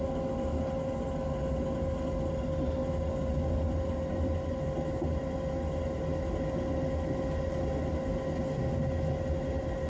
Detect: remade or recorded recorded